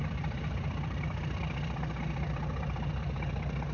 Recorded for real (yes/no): yes